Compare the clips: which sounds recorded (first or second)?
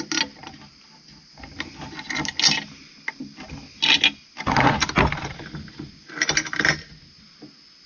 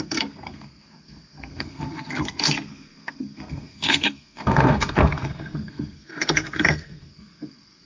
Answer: first